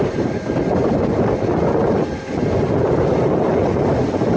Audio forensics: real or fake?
real